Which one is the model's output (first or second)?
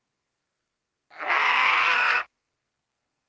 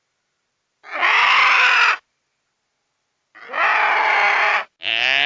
first